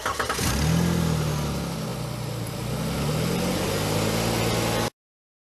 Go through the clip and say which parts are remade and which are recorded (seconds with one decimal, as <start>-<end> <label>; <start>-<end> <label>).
0.0-5.5 recorded